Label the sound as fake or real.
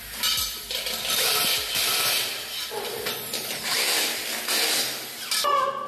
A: real